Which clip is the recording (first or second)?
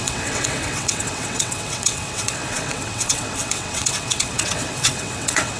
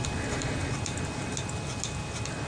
second